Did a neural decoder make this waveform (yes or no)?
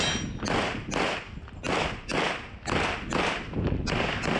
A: no